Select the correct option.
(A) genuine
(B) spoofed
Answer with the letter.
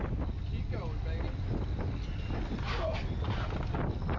A